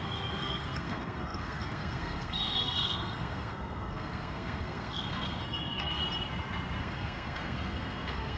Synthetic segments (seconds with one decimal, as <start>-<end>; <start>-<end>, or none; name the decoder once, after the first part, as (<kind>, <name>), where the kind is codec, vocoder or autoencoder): 0.0-6.0 (codec, SNAC); 6.8-8.4